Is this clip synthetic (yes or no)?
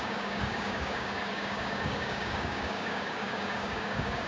yes